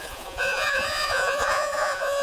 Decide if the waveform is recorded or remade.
remade